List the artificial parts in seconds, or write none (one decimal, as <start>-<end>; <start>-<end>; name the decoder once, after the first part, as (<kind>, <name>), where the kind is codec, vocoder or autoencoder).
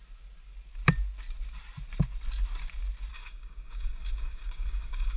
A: 3.1-5.2 (codec, DAC)